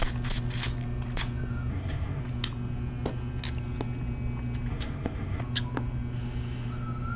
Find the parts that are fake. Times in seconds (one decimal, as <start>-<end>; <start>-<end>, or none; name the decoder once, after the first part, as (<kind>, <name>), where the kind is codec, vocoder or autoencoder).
1.7-2.2 (codec, SNAC); 4.7-5.4